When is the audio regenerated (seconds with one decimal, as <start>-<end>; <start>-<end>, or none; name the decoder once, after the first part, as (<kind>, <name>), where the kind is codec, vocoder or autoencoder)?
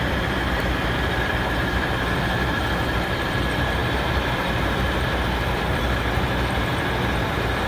0.0-6.7 (vocoder, BigVGAN v2); 7.3-7.7